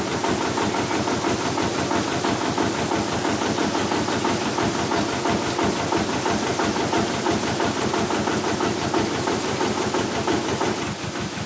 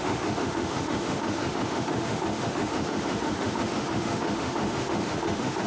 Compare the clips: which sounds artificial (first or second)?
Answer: second